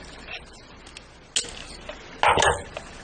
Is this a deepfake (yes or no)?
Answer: no